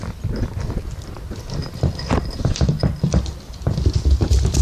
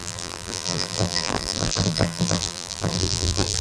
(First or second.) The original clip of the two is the first